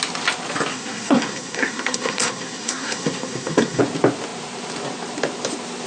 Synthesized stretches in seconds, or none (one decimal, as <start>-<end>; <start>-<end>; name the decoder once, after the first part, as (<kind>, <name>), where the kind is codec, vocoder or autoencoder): 0.7-3.8 (codec, SNAC)